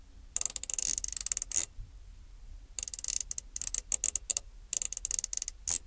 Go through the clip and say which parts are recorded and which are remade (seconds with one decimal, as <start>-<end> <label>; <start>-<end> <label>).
0.0-5.9 recorded